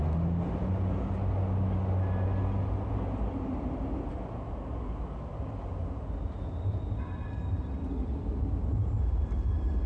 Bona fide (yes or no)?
yes